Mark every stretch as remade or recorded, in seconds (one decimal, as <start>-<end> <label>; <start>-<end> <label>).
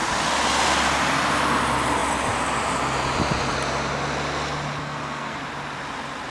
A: 0.0-4.8 recorded; 4.8-5.4 remade; 5.4-6.3 recorded